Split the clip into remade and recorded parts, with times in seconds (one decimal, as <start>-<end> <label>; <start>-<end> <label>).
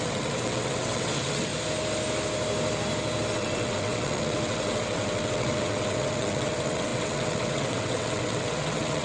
0.0-1.5 remade; 1.5-3.3 recorded; 3.3-9.0 remade